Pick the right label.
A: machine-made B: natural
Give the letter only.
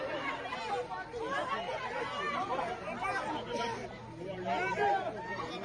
B